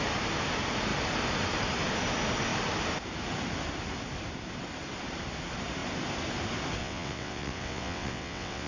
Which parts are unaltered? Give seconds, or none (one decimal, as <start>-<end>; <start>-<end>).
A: 0.0-6.8